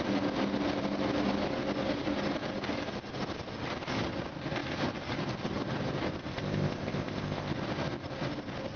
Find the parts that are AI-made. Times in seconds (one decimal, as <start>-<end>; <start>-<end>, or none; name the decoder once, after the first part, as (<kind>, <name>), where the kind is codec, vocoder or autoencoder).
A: 6.3-7.5 (codec, ZipCodec)